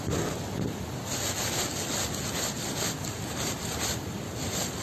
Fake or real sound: real